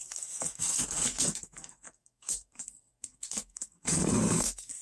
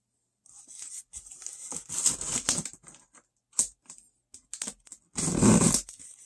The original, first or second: second